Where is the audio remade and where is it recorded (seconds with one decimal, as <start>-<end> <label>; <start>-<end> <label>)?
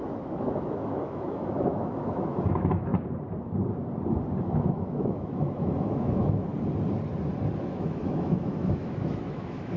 0.0-2.9 remade; 2.9-4.4 recorded; 4.4-6.5 remade; 6.5-7.6 recorded; 7.6-9.8 remade